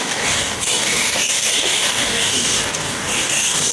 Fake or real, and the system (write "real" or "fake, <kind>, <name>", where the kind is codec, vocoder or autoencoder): fake, codec, DAC